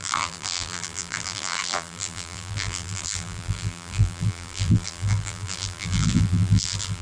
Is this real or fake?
fake